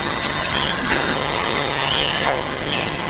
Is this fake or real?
fake